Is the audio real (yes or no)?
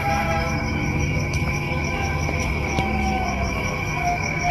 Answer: no